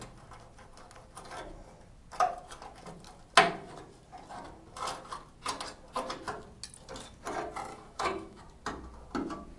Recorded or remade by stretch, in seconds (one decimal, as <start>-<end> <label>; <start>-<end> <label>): 0.0-7.7 recorded; 7.7-8.4 remade; 8.4-9.6 recorded